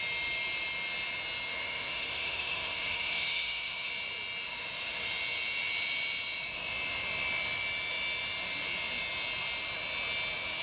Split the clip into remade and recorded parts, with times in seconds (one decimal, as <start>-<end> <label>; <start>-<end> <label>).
0.0-1.5 recorded; 1.5-3.9 remade; 3.9-10.6 recorded